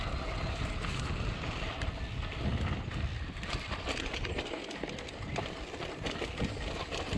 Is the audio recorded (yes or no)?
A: yes